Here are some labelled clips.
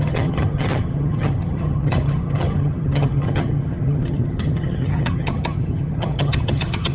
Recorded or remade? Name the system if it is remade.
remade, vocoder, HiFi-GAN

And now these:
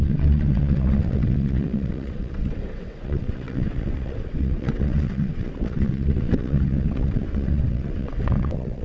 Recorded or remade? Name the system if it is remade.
remade, vocoder, WaveNeXt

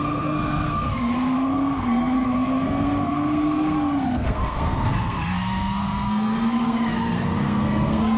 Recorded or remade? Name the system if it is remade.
remade, codec, SNAC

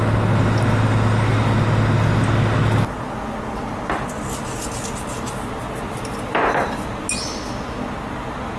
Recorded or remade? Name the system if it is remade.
recorded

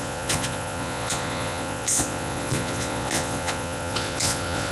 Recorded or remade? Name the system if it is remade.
remade, vocoder, Vocos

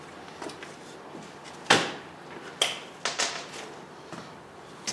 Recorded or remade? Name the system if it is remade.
recorded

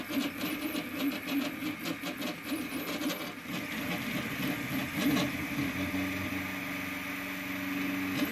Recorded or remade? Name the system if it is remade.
recorded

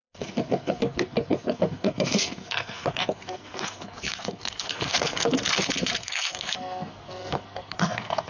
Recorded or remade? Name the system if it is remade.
remade, codec, SNAC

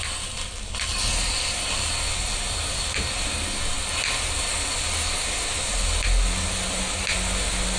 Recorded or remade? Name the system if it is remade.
recorded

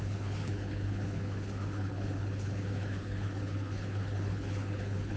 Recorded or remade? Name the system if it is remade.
remade, codec, HILCodec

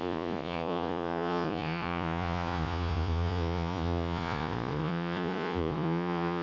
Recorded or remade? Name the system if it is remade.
remade, vocoder, Vocos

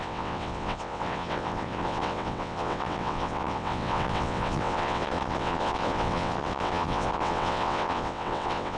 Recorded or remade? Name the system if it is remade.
remade, vocoder, WaveNeXt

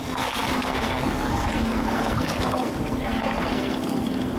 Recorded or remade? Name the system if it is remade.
remade, codec, SNAC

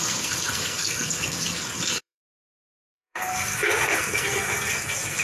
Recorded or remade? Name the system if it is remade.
remade, codec, SNAC